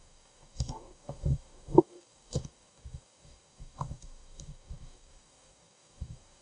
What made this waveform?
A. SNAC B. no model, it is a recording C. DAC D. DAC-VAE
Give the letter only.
C